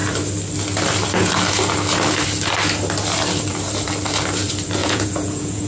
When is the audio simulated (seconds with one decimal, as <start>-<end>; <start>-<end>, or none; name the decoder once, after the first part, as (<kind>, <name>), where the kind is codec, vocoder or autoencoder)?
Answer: 4.8-5.7 (vocoder, Vocos)